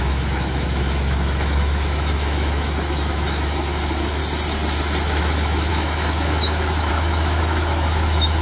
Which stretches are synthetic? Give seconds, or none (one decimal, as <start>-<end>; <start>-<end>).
0.0-4.2; 5.2-8.4